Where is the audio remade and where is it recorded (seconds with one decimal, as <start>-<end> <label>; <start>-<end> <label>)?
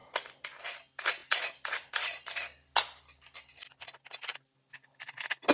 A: 0.0-5.5 recorded